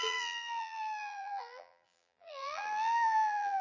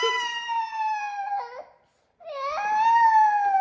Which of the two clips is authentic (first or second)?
second